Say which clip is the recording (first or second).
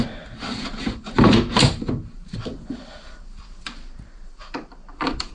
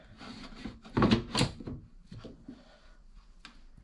second